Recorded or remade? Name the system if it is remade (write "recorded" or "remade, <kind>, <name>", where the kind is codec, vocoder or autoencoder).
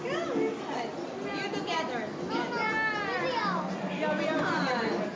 recorded